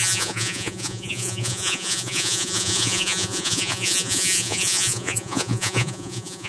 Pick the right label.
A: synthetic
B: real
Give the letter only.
A